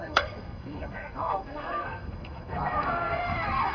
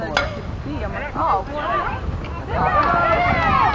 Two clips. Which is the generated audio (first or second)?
first